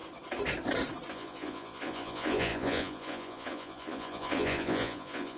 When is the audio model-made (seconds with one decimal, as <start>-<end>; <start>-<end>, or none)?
1.1-5.4